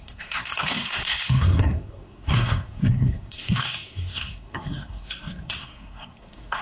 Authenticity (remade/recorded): remade